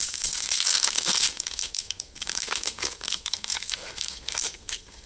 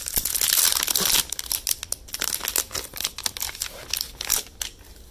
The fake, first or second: first